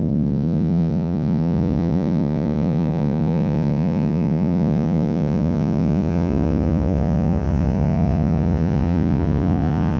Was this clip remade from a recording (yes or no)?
yes